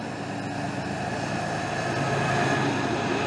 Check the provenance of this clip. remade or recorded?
recorded